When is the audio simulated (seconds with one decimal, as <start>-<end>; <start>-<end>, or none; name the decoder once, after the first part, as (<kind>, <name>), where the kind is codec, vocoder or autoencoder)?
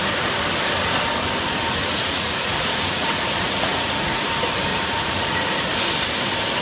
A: 1.8-4.2 (vocoder, Vocos); 4.7-5.7